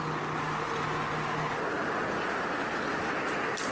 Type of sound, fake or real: real